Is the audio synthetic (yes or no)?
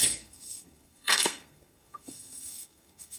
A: yes